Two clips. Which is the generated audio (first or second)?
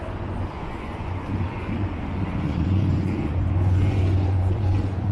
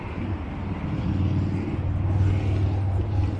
first